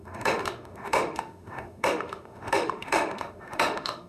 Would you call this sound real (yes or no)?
no